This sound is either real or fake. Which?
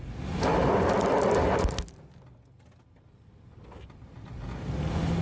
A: real